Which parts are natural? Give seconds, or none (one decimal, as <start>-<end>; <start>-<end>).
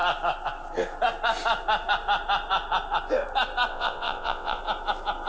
0.0-3.7; 4.6-5.3